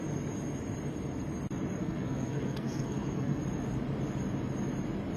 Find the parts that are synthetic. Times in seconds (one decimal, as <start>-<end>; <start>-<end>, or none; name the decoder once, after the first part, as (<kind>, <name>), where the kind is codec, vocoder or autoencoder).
1.8-3.4 (codec, SNAC)